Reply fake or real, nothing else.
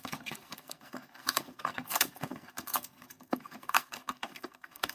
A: fake